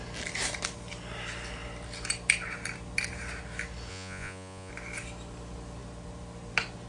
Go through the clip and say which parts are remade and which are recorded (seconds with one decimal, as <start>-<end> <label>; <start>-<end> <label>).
0.0-3.9 recorded; 3.9-4.7 remade; 4.7-6.9 recorded

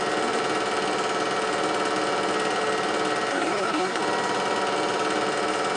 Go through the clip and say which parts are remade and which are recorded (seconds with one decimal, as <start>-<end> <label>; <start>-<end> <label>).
0.0-3.3 recorded; 3.3-4.0 remade; 4.0-5.8 recorded